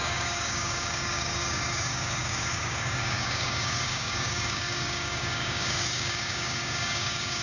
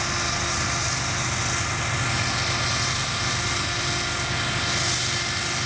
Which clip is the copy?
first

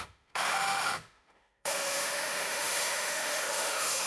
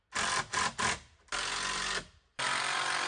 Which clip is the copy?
first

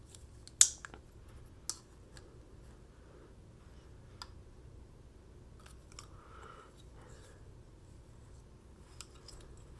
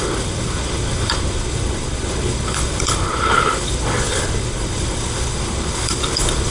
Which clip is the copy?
second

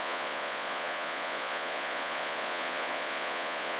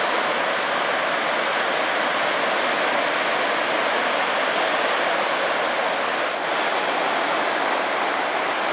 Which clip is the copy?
first